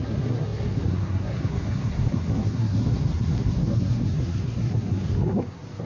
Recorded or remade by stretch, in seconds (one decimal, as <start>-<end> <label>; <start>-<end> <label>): 0.0-5.8 remade